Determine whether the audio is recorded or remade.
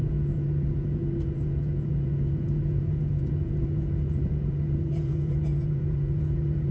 remade